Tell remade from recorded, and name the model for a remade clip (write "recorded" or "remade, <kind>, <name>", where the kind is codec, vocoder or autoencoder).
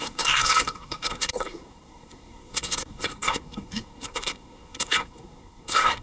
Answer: remade, codec, SNAC